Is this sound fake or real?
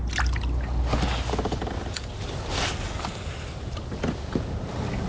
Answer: real